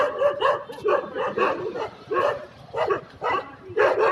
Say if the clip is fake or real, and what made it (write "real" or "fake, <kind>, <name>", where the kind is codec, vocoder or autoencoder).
real